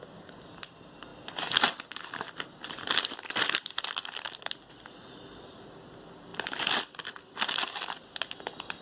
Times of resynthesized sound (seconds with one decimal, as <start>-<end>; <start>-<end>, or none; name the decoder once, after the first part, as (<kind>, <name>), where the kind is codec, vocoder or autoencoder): none

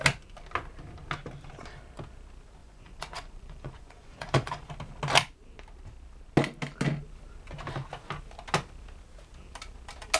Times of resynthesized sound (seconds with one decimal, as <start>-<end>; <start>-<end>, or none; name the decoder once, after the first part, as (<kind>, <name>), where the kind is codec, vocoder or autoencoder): 2.6-4.7 (vocoder, Vocos)

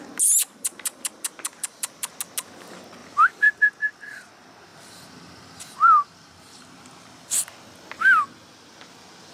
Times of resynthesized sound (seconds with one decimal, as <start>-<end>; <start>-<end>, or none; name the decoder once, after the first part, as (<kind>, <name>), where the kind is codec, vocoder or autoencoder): 0.4-2.1 (vocoder, BigVGAN v2); 3.0-4.3; 4.7-7.5